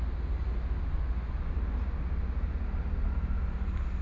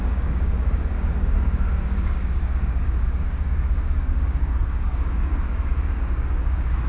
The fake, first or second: second